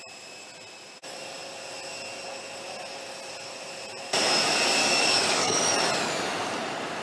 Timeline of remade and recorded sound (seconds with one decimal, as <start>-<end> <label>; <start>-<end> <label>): 0.0-4.8 recorded; 4.8-5.6 remade; 5.6-7.0 recorded